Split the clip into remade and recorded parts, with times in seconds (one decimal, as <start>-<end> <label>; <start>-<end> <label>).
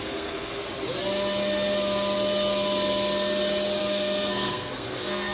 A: 0.0-0.6 remade; 0.6-3.8 recorded; 3.8-5.3 remade